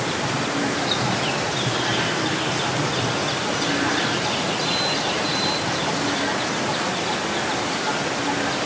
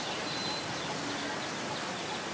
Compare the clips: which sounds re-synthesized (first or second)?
first